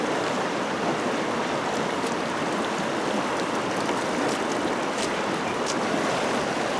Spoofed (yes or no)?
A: no